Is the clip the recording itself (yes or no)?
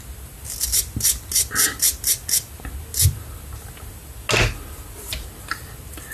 yes